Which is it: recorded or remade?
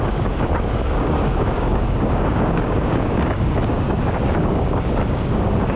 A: remade